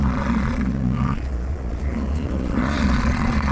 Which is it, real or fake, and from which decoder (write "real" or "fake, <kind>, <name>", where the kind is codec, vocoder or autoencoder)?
fake, vocoder, Vocos